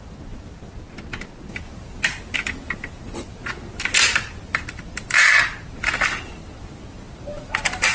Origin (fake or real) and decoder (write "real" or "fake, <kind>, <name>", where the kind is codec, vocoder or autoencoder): real